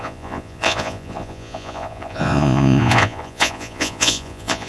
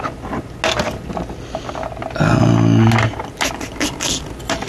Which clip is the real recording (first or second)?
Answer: second